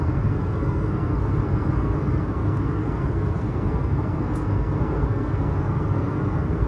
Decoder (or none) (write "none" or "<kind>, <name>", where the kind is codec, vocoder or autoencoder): codec, SNAC